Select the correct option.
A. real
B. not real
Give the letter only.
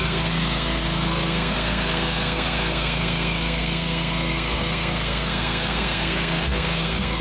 B